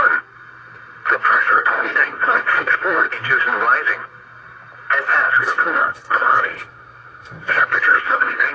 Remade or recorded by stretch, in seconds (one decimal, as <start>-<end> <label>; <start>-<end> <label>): 0.0-1.3 recorded; 1.3-3.1 remade; 3.1-5.4 recorded; 5.4-8.5 remade

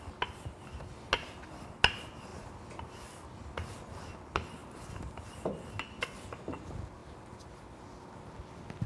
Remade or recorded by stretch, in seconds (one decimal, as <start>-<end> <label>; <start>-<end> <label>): 0.0-8.9 recorded

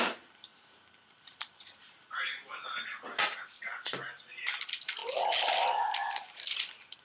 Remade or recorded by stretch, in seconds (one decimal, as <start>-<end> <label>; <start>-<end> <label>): 0.0-5.0 remade; 5.0-5.6 recorded; 5.6-7.0 remade

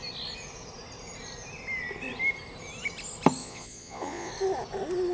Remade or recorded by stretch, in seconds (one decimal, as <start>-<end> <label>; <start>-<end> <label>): 0.0-3.4 recorded; 3.4-4.3 remade; 4.3-5.1 recorded